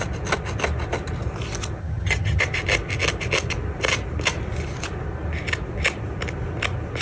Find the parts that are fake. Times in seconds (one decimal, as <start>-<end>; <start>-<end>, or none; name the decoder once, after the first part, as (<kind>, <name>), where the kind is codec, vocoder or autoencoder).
1.8-2.4 (vocoder, HiFi-GAN)